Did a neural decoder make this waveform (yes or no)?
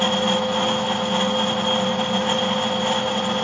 no